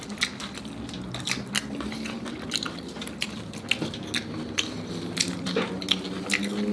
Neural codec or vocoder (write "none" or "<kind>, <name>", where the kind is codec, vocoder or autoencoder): none